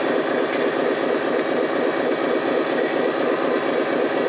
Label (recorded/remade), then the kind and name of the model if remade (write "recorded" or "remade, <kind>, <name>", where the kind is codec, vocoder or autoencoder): recorded